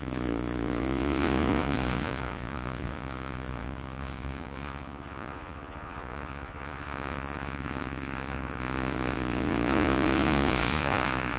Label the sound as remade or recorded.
remade